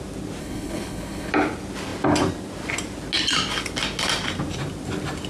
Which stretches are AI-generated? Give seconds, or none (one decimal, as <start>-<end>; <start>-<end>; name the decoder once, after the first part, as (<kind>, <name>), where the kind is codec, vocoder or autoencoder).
0.4-1.3 (codec, HILCodec)

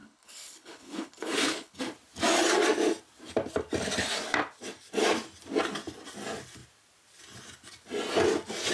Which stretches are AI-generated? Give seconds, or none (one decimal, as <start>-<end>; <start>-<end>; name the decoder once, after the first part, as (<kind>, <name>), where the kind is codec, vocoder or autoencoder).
0.0-1.8 (codec, HILCodec)

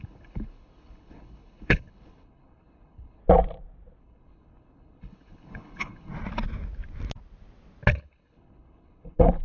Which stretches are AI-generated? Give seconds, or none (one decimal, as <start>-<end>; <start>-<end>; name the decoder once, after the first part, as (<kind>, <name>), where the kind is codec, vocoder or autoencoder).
0.0-3.2 (codec, HILCodec); 4.0-6.1; 8.0-9.4

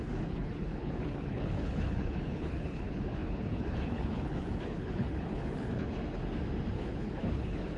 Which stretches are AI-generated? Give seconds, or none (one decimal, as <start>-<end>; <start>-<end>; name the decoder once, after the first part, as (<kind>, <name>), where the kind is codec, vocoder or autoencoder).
0.0-6.2 (codec, HILCodec); 6.7-7.8

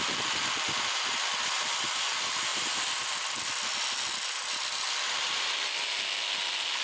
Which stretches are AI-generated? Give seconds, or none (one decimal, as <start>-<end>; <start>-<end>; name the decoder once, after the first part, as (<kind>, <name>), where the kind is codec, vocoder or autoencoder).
none